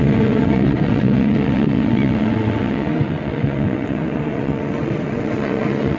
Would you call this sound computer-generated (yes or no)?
yes